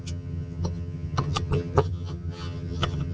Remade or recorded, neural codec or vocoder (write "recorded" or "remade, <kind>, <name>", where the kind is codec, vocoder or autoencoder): remade, vocoder, HiFi-GAN